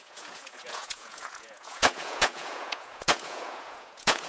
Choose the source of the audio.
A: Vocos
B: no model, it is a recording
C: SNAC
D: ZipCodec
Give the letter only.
A